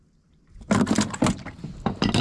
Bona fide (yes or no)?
yes